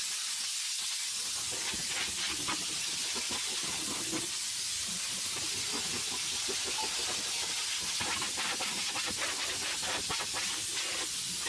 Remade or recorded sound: recorded